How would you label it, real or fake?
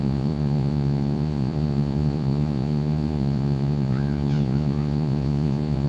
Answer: fake